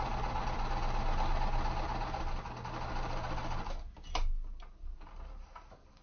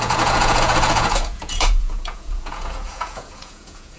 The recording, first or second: first